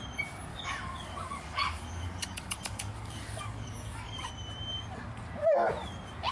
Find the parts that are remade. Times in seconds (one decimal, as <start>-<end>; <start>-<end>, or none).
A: 0.5-4.3